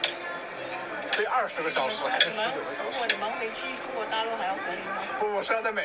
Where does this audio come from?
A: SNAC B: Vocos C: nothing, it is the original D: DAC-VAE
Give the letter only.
C